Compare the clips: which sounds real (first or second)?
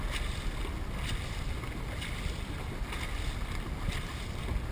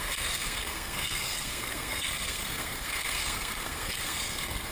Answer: first